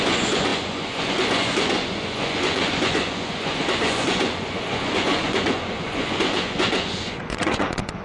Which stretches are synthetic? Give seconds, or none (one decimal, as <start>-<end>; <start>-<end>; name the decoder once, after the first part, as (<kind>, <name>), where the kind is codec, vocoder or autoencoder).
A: 0.0-8.0 (vocoder, Vocos)